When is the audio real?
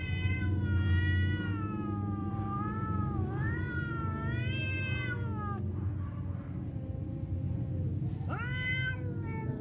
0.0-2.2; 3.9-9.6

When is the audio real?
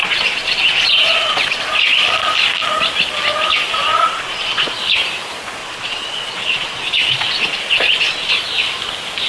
1.6-3.9; 4.8-5.6; 8.3-9.3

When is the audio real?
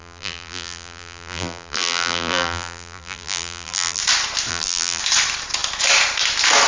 4.0-4.5; 5.0-6.7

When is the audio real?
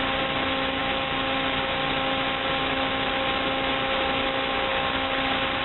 0.0-5.6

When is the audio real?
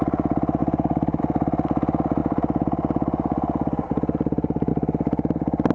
0.0-0.6; 1.2-2.2; 4.7-5.7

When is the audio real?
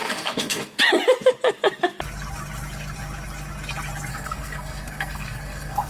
0.8-4.1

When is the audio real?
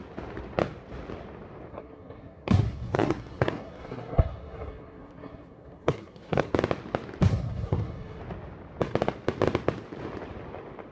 0.0-1.7; 6.5-7.3; 8.2-10.9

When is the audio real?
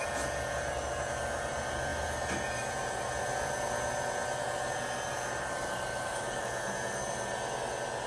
0.0-5.9; 6.4-8.1